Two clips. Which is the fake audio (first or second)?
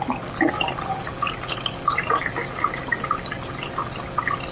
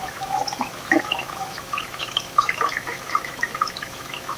second